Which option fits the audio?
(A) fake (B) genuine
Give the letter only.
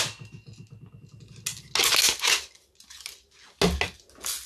B